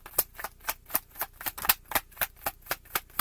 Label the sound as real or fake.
real